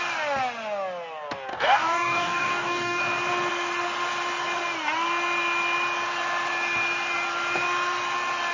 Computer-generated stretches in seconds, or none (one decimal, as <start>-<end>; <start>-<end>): 1.5-3.0